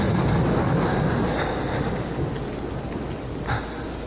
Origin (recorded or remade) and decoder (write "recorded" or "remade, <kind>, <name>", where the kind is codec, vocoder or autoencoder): recorded